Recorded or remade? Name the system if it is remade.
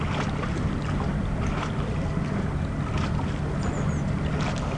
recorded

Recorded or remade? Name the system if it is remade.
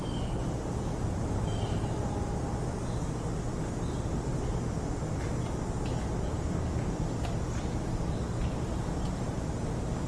recorded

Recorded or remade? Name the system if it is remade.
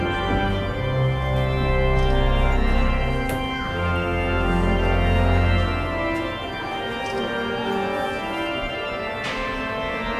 recorded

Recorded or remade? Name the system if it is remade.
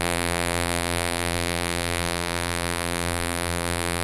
remade, vocoder, BigVGAN v2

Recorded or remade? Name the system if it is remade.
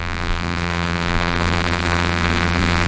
remade, vocoder, BigVGAN v2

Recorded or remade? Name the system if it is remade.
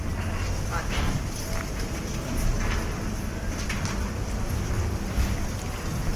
recorded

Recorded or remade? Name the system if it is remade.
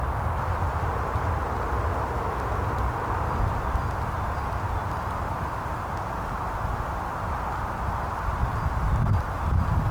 recorded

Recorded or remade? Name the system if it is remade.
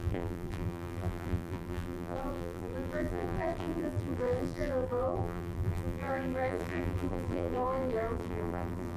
remade, vocoder, BigVGAN v2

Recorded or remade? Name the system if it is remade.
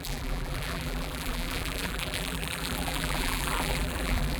remade, vocoder, BigVGAN v2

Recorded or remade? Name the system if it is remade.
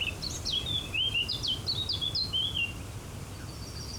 recorded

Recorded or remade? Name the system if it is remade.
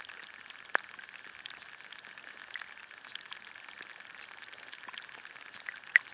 recorded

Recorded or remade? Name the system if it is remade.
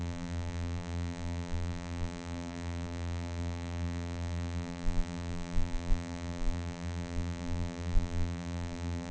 remade, vocoder, BigVGAN v2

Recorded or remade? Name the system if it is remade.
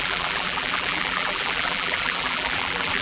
remade, vocoder, BigVGAN v2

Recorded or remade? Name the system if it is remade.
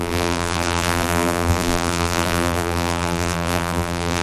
remade, vocoder, BigVGAN v2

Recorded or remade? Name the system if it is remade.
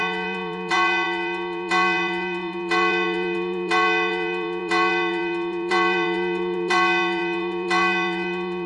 remade, vocoder, BigVGAN v2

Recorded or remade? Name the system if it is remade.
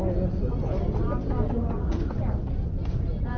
recorded